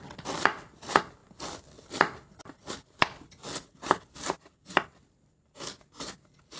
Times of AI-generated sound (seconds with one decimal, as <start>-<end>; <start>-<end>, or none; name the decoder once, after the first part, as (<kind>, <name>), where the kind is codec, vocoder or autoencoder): none